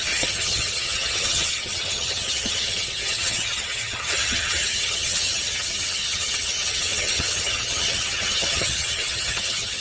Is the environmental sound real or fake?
fake